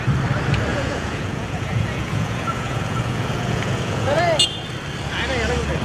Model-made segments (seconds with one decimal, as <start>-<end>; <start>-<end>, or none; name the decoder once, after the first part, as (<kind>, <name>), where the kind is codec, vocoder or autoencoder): 0.7-4.2 (vocoder, Vocos)